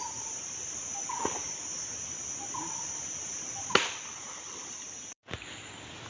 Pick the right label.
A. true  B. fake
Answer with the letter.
B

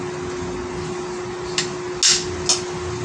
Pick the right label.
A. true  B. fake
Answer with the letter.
A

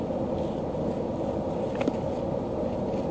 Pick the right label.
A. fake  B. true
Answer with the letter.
B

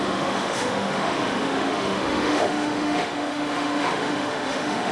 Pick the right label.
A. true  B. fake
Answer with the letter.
B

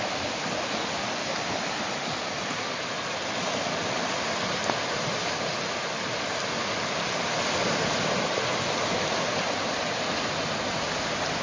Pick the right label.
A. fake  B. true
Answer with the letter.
B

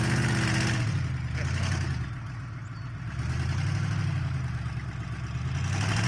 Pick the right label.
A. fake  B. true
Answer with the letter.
B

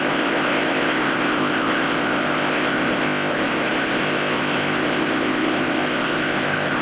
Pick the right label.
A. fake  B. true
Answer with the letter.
A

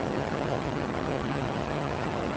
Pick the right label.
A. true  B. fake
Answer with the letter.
B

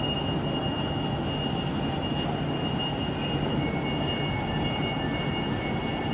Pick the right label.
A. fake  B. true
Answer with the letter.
B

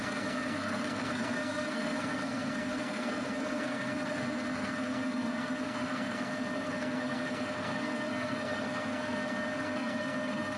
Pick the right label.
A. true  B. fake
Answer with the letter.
B